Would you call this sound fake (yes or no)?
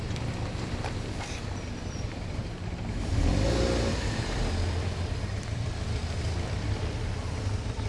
yes